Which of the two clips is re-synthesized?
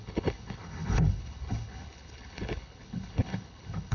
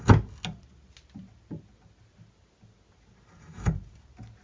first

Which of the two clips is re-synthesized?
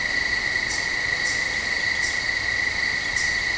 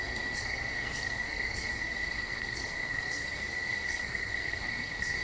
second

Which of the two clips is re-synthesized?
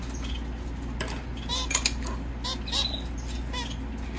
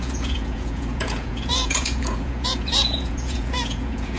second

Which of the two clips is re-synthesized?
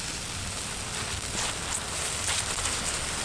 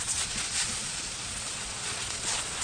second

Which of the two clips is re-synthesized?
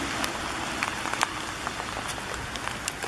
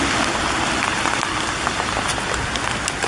second